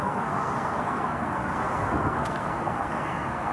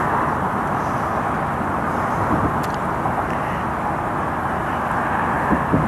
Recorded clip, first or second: second